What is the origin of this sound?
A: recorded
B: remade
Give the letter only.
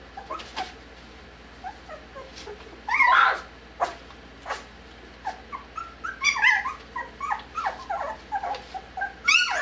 A